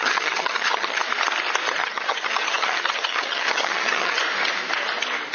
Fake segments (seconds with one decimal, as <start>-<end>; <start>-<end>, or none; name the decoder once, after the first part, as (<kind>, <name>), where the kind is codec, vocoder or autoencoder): 0.0-1.1 (vocoder, HiFi-GAN); 1.8-4.2